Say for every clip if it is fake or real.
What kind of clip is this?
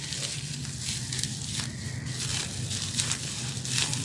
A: real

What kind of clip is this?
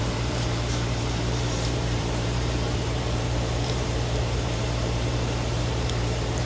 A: fake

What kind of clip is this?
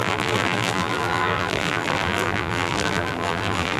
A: fake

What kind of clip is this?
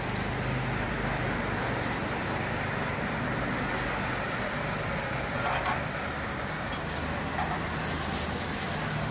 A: real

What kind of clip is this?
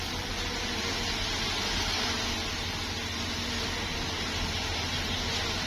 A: real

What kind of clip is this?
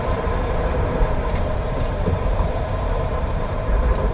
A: fake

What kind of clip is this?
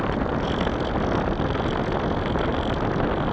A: real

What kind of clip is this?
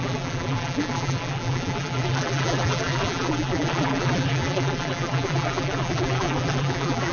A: fake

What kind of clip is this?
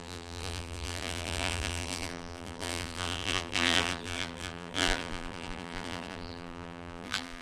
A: fake